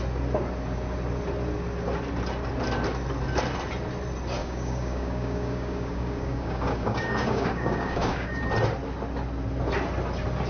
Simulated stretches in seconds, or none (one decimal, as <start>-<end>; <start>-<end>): 4.4-8.4